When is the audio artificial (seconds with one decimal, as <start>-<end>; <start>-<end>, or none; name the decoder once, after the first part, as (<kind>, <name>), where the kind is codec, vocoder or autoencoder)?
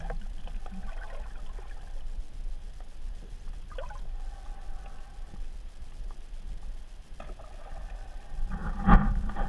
8.6-9.5 (vocoder, BigVGAN v2)